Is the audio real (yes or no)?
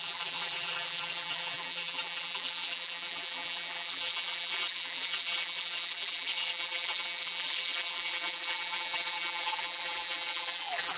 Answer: no